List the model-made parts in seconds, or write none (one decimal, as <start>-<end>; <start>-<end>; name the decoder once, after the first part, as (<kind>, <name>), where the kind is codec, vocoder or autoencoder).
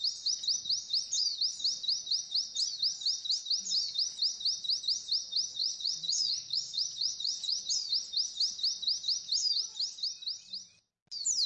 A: 5.6-7.7 (vocoder, Vocos)